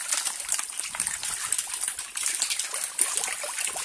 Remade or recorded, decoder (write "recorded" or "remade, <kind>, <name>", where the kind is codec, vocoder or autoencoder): recorded